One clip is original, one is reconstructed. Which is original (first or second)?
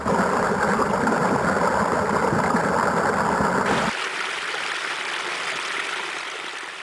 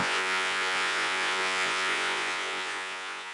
first